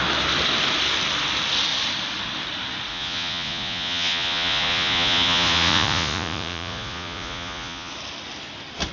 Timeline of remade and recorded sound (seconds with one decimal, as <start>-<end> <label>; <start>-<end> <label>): 0.0-2.9 recorded; 2.9-7.9 remade; 7.9-8.9 recorded